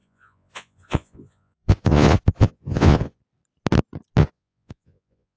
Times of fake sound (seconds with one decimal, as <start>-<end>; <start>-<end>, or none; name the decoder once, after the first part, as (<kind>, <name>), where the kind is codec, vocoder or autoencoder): 0.0-3.2 (vocoder, Vocos); 4.2-5.4